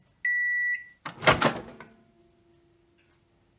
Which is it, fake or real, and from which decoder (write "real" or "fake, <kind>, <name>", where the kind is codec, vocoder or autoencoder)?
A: real